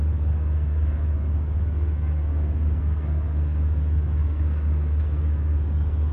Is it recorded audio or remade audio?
remade